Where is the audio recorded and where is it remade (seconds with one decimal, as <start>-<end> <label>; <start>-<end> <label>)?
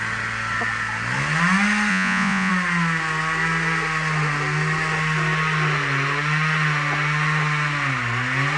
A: 0.0-1.9 recorded; 1.9-2.5 remade; 2.5-8.6 recorded